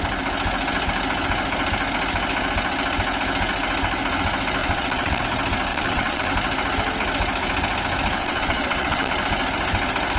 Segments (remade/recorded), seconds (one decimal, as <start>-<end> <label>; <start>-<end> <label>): 0.0-4.6 recorded; 4.6-5.2 remade; 5.2-5.7 recorded; 5.7-6.3 remade; 6.3-8.2 recorded; 8.2-9.1 remade; 9.1-10.2 recorded